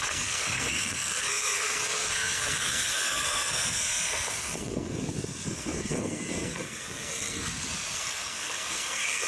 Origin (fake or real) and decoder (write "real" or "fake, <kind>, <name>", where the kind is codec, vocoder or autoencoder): fake, codec, SNAC